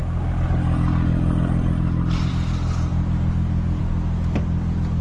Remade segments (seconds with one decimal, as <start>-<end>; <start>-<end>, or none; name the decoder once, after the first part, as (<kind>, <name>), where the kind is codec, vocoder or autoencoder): none